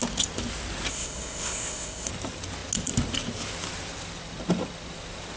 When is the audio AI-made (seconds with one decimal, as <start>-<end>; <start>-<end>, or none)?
0.9-2.1